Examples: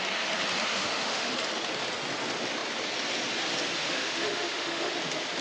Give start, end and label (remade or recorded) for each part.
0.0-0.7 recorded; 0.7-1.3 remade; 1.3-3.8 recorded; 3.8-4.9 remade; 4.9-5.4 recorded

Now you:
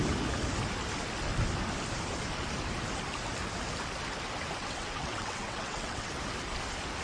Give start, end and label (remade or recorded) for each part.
0.0-4.6 recorded; 4.6-6.1 remade; 6.1-7.0 recorded

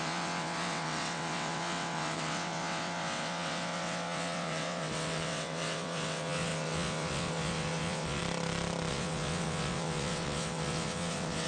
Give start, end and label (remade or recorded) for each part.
0.0-8.2 remade; 8.2-8.9 recorded; 8.9-11.5 remade